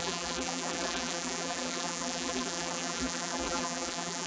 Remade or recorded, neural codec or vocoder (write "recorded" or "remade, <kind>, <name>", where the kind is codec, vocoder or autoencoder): remade, vocoder, BigVGAN v2